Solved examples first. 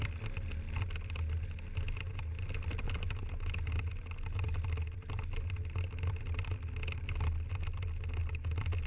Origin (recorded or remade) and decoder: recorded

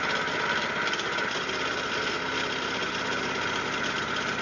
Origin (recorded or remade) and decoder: recorded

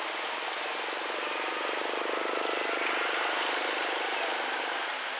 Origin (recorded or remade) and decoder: recorded